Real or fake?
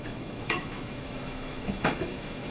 fake